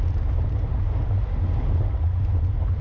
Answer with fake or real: real